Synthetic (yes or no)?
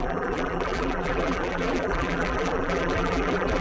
yes